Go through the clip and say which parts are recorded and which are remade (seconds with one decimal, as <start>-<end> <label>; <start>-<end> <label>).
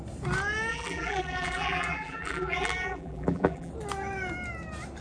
0.0-0.7 recorded; 0.7-3.7 remade; 3.7-5.0 recorded